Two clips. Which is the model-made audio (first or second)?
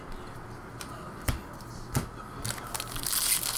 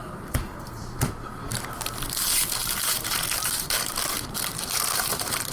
second